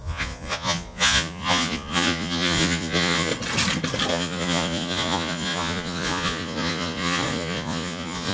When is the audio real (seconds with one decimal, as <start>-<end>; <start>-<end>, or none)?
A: 3.3-4.1